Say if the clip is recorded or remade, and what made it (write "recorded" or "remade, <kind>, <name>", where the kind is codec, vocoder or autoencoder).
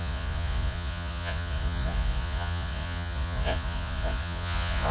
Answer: remade, vocoder, Vocos